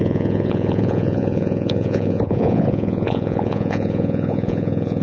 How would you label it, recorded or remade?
remade